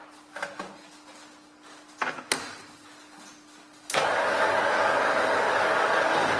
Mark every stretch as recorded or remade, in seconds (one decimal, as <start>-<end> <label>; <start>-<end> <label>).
0.0-3.8 recorded; 3.8-6.4 remade

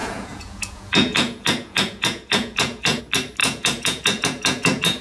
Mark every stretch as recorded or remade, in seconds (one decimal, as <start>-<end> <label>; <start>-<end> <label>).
0.0-3.0 remade; 3.0-3.4 recorded; 3.4-5.0 remade

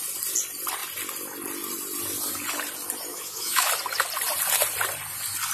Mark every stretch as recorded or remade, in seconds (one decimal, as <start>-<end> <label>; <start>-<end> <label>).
0.0-3.1 recorded; 3.1-3.7 remade; 3.7-5.5 recorded

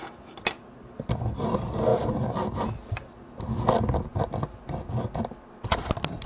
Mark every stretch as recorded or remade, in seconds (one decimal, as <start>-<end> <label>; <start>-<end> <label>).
0.0-4.1 recorded; 4.1-4.6 remade; 4.6-6.3 recorded

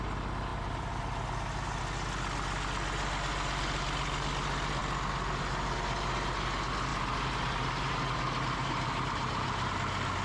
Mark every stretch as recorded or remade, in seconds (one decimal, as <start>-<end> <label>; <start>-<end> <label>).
0.0-0.5 recorded; 0.5-1.8 remade; 1.8-6.9 recorded; 6.9-9.7 remade; 9.7-10.2 recorded

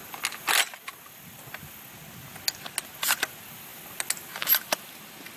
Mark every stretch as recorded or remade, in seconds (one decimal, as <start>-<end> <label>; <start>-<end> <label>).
0.0-5.4 recorded

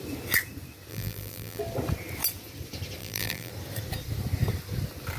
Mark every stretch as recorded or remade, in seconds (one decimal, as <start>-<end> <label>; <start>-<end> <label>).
0.0-0.9 recorded; 0.9-1.6 remade; 1.6-3.0 recorded; 3.0-3.5 remade; 3.5-5.2 recorded

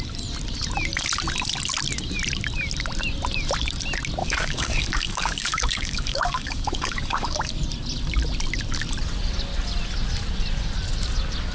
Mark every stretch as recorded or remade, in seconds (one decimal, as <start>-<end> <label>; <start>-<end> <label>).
0.0-4.2 recorded; 4.2-7.5 remade; 7.5-11.5 recorded